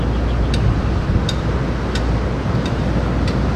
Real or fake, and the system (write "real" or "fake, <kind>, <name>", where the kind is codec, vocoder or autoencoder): real